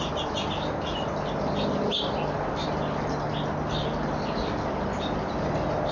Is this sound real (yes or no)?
yes